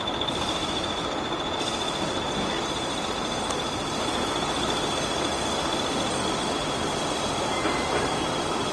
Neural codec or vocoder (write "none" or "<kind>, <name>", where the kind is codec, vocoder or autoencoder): none